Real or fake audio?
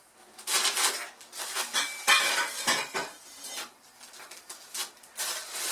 real